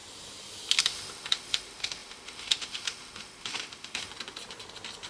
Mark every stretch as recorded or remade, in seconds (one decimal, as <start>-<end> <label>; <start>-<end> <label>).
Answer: 0.0-0.8 recorded; 0.8-4.1 remade; 4.1-5.1 recorded